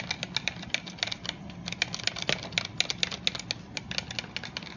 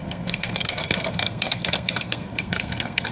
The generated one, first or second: second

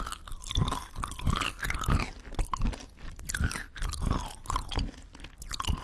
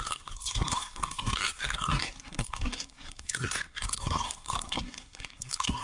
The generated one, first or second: second